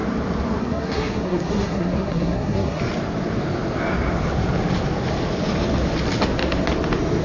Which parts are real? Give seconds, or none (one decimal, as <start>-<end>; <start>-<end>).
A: 0.0-0.6; 2.8-7.2

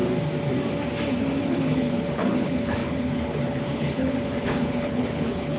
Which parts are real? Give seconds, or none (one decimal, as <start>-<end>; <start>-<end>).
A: 0.0-1.4

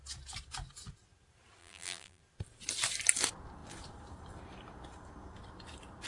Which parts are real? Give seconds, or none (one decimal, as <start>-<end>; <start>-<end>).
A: 0.0-1.6; 2.2-6.1

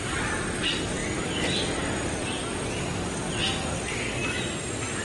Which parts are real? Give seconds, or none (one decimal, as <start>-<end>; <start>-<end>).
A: 0.0-5.0

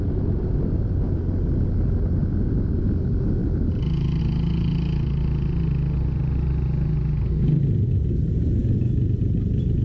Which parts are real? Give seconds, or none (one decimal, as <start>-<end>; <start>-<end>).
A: 0.0-9.8